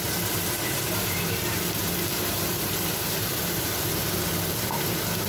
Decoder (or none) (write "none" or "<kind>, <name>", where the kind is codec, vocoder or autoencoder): vocoder, BigVGAN v2